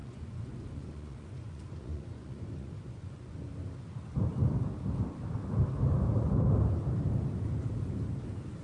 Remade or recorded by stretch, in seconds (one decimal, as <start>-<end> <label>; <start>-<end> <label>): 0.0-3.5 remade; 3.5-8.6 recorded